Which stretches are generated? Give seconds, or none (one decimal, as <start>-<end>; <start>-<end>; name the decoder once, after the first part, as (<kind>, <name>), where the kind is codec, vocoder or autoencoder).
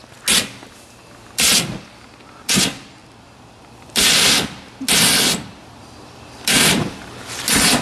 1.0-2.5 (vocoder, BigVGAN v2); 3.0-7.2